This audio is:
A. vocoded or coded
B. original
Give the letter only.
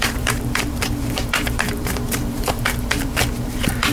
A